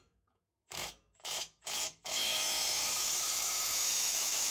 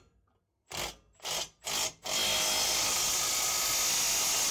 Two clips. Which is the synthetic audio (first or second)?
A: first